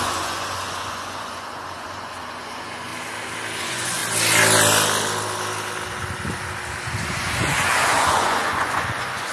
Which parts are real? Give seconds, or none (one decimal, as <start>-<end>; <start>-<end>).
2.9-3.6; 4.0-7.1